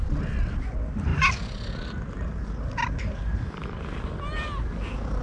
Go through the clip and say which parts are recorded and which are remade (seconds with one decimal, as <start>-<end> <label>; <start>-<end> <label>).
0.0-5.2 recorded